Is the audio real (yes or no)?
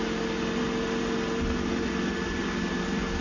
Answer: yes